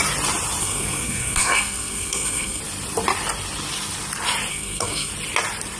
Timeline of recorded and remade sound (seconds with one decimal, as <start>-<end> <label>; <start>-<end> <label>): 0.0-0.6 recorded; 0.6-2.6 remade; 2.6-4.5 recorded; 4.5-5.1 remade; 5.1-5.8 recorded

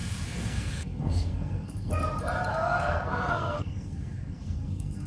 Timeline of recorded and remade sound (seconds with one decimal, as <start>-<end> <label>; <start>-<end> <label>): 0.0-1.9 remade; 1.9-2.5 recorded; 2.5-5.1 remade

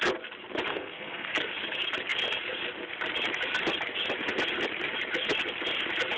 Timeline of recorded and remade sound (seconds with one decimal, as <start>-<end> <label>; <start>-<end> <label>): 0.0-0.7 recorded; 0.7-1.5 remade; 1.5-6.2 recorded

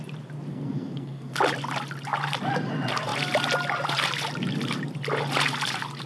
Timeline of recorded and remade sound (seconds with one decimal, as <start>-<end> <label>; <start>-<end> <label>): 0.0-0.5 recorded; 0.5-1.3 remade; 1.3-6.1 recorded

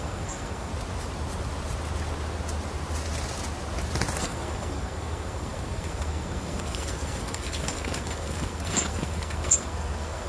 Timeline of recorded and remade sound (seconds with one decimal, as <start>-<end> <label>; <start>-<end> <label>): 0.0-0.7 remade; 0.7-4.2 recorded; 4.2-10.3 remade

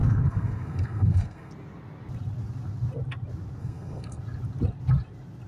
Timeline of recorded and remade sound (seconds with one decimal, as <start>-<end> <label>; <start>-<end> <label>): 0.0-1.5 remade; 1.5-3.6 recorded; 3.6-4.2 remade; 4.2-5.5 recorded

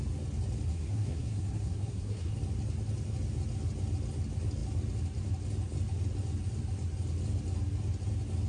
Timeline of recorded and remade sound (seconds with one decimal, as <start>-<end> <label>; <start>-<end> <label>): 0.0-0.7 recorded; 0.7-2.4 remade; 2.4-8.5 recorded